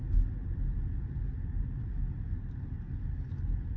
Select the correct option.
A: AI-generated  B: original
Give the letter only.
B